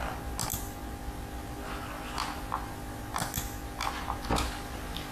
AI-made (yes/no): no